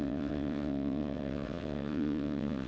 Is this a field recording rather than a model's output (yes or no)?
no